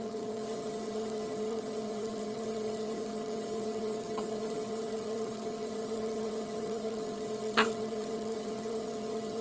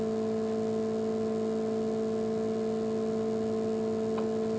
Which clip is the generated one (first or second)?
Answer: first